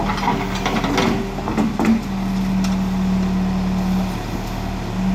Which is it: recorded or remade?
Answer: recorded